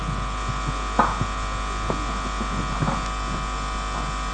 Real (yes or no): yes